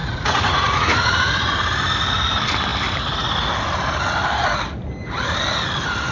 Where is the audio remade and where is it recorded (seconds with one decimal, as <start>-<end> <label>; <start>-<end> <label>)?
0.0-1.5 remade; 1.5-6.1 recorded